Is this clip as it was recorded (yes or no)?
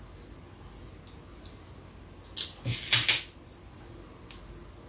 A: yes